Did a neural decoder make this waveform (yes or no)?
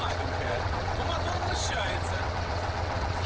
yes